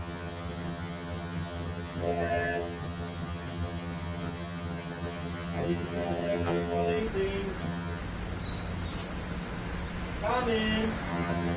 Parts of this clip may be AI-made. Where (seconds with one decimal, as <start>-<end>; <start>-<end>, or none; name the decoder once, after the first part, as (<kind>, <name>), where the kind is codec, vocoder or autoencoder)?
0.0-7.0 (vocoder, HiFi-GAN); 7.6-8.0; 11.1-11.6